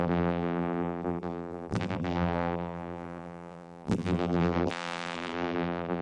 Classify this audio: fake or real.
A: fake